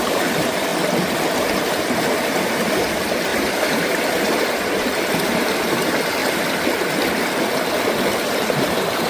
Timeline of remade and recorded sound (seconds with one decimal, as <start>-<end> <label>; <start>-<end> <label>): 0.0-0.7 remade; 0.7-1.8 recorded; 1.8-6.2 remade; 6.2-8.0 recorded; 8.0-9.1 remade